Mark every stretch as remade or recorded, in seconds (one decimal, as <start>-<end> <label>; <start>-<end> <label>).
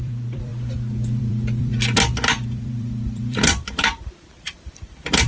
0.0-0.5 remade; 0.5-1.2 recorded; 1.2-5.3 remade